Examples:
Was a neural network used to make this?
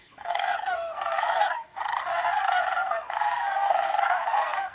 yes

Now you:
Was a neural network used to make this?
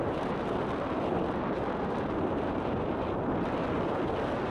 no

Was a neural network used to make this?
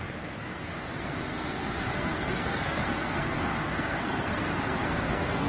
yes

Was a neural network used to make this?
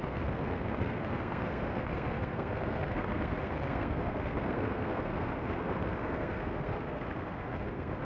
yes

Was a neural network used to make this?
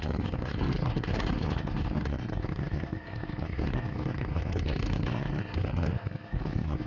yes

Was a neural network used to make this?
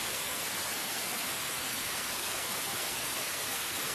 yes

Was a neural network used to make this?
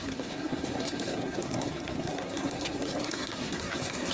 yes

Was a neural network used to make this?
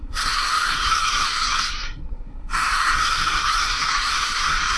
yes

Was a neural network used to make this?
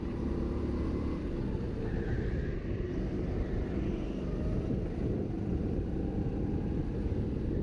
no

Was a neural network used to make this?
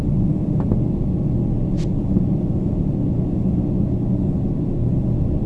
no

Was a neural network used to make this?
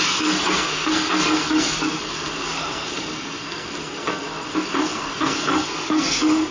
yes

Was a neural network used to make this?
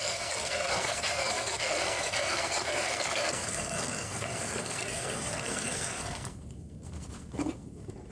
yes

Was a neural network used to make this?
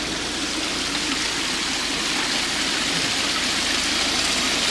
no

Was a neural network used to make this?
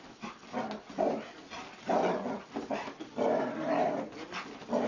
no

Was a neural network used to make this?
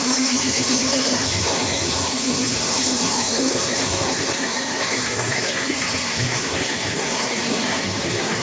yes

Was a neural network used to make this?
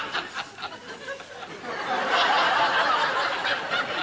no